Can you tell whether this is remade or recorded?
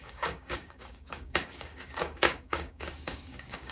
remade